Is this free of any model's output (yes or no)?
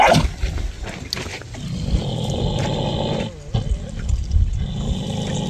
yes